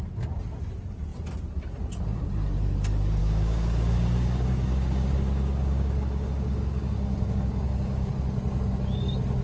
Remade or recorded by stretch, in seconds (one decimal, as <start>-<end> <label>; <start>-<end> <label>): 0.0-3.2 recorded; 3.2-8.1 remade; 8.1-9.4 recorded